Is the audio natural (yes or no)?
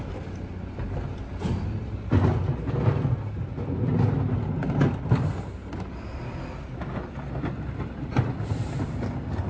yes